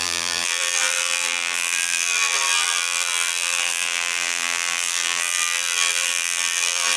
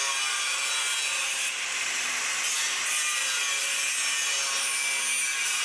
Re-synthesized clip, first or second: first